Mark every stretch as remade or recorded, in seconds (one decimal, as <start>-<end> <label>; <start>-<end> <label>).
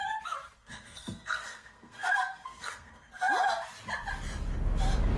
0.0-0.6 recorded; 0.6-3.1 remade; 3.1-5.2 recorded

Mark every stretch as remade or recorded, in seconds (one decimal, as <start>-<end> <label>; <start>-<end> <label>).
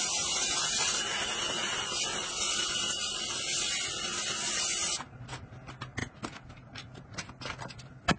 0.0-8.2 recorded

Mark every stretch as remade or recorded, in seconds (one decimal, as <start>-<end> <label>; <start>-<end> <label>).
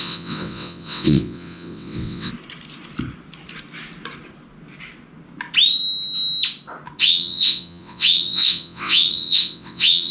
0.0-2.3 remade; 2.3-7.0 recorded; 7.0-10.1 remade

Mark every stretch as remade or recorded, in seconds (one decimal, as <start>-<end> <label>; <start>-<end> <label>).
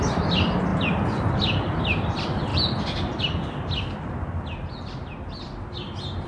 0.0-6.3 recorded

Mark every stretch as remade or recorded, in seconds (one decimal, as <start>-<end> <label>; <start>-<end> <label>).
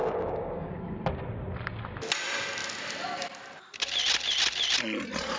0.0-0.7 remade; 0.7-5.4 recorded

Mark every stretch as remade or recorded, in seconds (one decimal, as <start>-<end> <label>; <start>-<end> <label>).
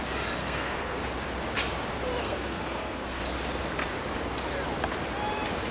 0.0-0.4 recorded; 0.4-1.0 remade; 1.0-2.2 recorded; 2.2-3.2 remade; 3.2-5.7 recorded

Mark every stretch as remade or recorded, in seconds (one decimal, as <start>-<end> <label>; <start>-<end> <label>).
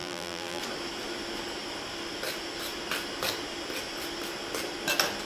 0.0-0.6 remade; 0.6-5.2 recorded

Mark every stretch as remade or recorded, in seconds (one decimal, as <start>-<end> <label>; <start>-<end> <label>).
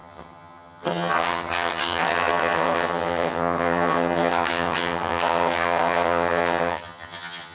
0.0-7.5 remade